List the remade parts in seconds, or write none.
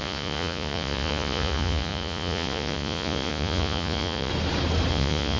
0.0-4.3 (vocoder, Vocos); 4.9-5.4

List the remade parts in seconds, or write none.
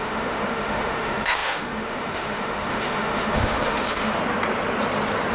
0.0-4.2 (autoencoder, DAC-VAE)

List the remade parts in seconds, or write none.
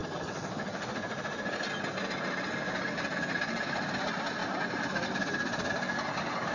none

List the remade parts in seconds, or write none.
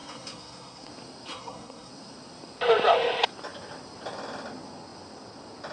0.0-0.9 (codec, SNAC); 1.3-1.9